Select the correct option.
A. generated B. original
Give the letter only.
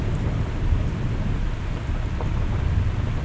B